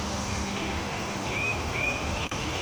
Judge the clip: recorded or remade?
remade